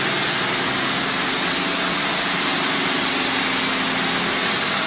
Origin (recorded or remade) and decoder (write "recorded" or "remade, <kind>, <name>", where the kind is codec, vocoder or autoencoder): recorded